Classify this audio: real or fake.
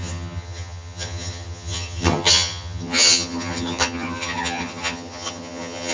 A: fake